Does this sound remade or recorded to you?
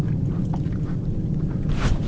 remade